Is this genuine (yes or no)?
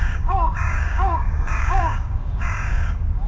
no